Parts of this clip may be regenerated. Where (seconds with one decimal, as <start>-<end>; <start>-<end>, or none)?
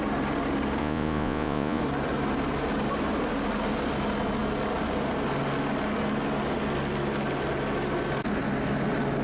0.8-1.8